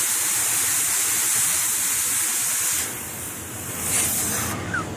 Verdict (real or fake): real